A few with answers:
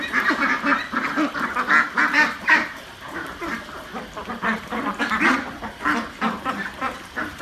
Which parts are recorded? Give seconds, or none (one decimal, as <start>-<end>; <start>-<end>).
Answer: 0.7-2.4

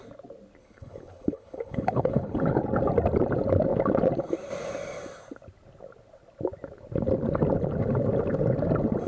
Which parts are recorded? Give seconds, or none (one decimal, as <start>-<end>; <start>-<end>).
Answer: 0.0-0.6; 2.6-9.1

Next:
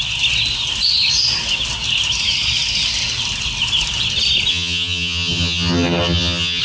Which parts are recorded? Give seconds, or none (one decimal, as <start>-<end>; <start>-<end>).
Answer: 0.0-4.5

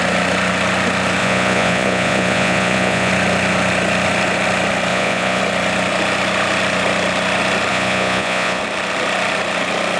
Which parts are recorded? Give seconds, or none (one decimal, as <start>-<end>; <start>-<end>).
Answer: 0.0-1.2; 3.1-4.9; 5.4-7.7; 8.6-10.0

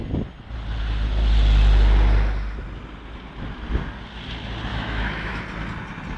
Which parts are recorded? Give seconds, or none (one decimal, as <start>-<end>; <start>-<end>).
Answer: 0.0-4.7; 5.4-6.2

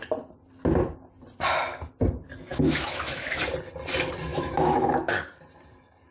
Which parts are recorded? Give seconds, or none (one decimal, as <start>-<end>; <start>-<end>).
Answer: 0.0-2.5; 3.4-4.3; 5.1-6.1

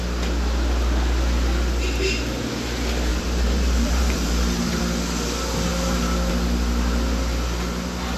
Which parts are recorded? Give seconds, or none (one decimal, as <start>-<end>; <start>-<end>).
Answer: 0.0-3.1; 4.8-8.2

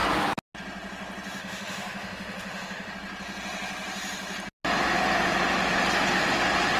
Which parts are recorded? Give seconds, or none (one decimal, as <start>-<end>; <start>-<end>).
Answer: 0.0-1.4; 2.9-6.8